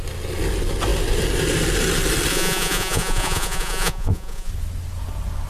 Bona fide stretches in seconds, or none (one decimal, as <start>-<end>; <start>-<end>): 0.0-2.3; 4.5-5.5